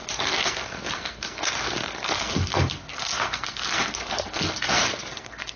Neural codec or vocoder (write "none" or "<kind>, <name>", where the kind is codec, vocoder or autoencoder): codec, SNAC